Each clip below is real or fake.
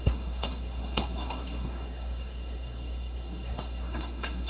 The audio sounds fake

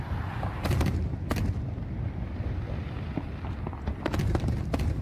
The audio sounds real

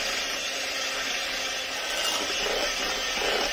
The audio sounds real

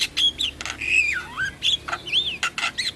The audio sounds real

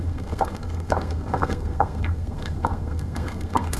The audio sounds fake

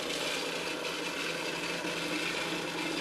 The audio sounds real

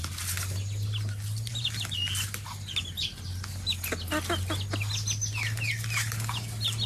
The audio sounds real